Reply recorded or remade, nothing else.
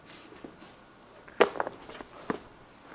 recorded